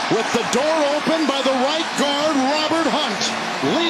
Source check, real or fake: fake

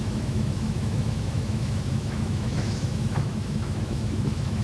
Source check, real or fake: fake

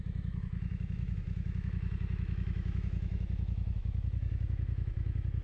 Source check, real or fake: fake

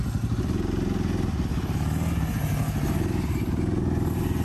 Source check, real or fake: real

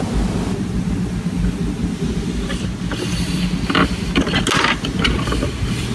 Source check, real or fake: real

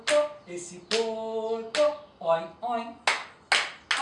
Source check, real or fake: real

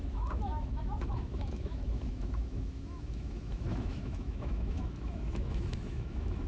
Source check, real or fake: fake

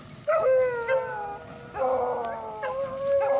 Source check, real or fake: real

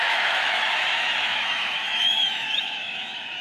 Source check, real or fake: fake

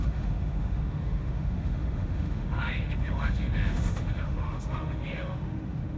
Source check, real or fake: fake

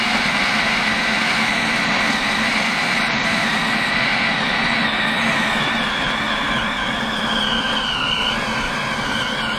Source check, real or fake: real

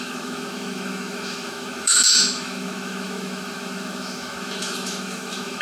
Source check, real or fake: fake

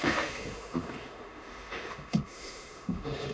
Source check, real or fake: fake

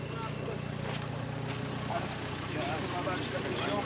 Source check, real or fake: real